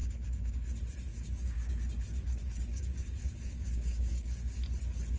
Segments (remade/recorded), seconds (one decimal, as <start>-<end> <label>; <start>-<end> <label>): 0.0-0.5 remade; 0.5-1.1 recorded; 1.1-1.7 remade; 1.7-2.1 recorded; 2.1-4.6 remade; 4.6-5.2 recorded